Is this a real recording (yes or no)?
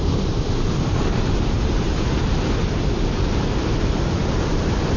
yes